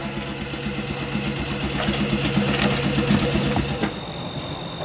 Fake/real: real